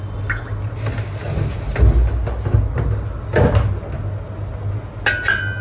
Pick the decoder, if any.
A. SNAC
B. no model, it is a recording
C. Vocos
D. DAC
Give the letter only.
B